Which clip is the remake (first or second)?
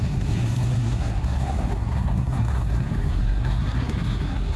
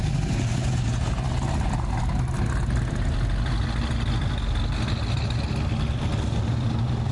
first